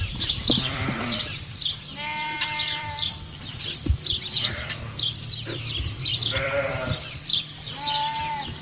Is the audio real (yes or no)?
no